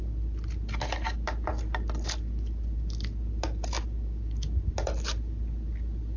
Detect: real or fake real